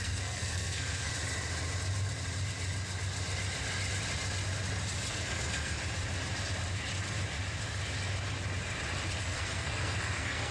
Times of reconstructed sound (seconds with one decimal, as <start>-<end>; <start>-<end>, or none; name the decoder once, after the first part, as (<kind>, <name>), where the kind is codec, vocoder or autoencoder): 0.0-1.1 (codec, SNAC); 5.1-5.8; 9.2-10.5